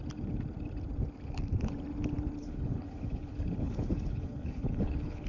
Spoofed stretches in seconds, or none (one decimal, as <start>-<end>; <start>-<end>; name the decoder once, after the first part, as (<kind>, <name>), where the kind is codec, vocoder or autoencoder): 2.4-5.3 (codec, HILCodec)